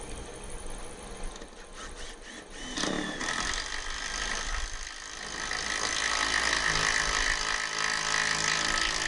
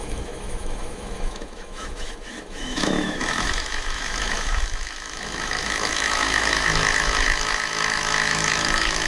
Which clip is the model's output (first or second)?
second